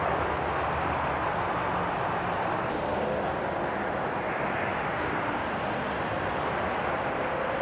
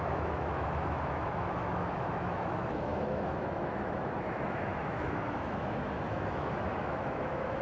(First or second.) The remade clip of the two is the second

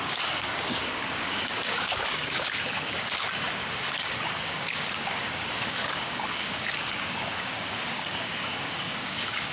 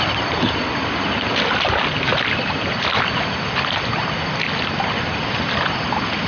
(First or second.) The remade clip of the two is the first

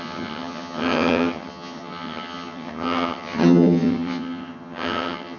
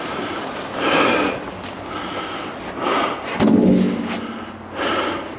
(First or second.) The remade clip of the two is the first